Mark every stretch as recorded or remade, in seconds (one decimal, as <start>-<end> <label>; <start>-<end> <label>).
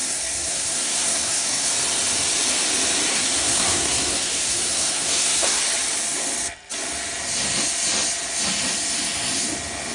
0.0-1.7 remade; 1.7-3.1 recorded; 3.1-5.6 remade; 5.6-9.9 recorded